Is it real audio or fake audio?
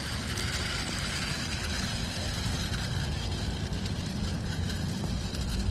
real